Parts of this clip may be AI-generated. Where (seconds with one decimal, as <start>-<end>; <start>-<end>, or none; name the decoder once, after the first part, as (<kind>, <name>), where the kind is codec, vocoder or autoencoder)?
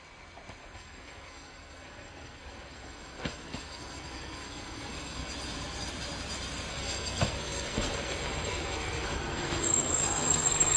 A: 0.6-5.3 (codec, SNAC); 6.7-10.8